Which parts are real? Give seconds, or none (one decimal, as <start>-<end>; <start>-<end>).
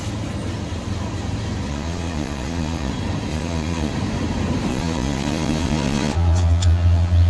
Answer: 0.0-1.7; 2.9-3.3; 3.9-4.7